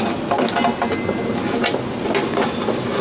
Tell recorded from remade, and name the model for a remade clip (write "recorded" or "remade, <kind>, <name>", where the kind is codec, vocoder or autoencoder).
recorded